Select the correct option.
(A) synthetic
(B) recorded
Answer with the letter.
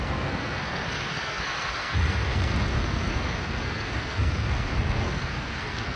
A